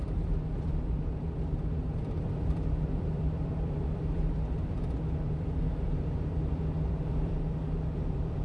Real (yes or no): no